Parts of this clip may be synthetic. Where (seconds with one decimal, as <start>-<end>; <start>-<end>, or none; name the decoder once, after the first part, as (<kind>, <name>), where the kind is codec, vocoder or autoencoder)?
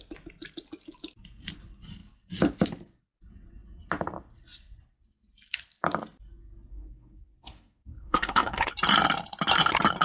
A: 6.7-8.7 (codec, SNAC)